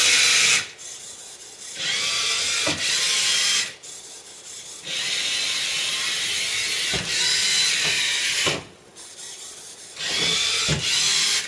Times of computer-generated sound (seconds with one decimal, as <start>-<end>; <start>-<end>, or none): none